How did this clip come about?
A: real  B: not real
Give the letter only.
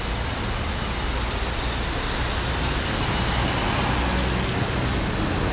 A